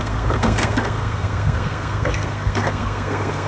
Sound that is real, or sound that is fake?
fake